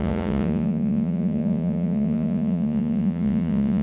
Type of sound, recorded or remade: remade